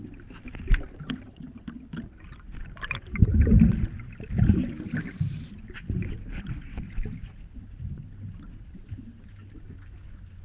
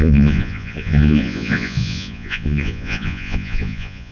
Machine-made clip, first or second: second